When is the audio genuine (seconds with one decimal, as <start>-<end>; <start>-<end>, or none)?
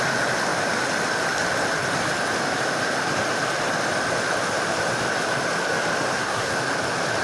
0.0-6.1; 6.6-7.2